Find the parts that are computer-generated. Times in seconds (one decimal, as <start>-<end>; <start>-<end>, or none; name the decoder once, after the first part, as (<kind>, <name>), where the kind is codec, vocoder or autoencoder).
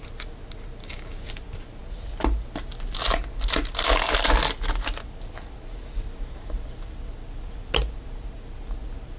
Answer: 0.8-1.3 (codec, DAC)